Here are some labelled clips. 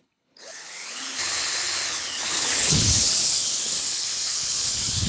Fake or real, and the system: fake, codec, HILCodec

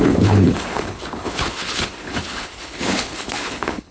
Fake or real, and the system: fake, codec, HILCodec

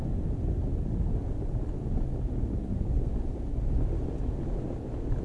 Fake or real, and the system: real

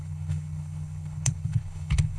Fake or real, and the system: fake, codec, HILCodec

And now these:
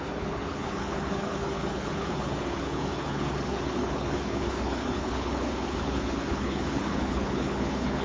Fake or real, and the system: fake, codec, HILCodec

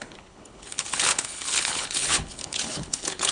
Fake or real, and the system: fake, codec, HILCodec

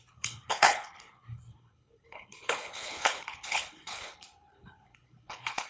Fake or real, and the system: fake, codec, HILCodec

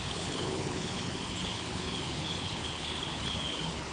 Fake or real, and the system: fake, codec, HILCodec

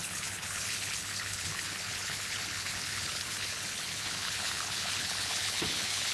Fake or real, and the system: fake, codec, HILCodec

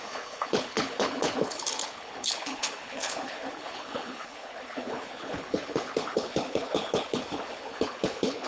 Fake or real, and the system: fake, codec, HILCodec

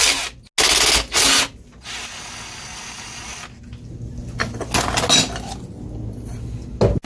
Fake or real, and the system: real